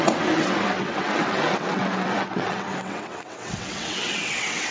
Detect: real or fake fake